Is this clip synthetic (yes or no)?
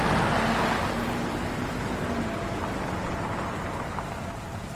no